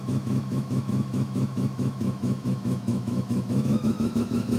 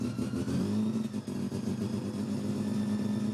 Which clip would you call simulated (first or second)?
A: first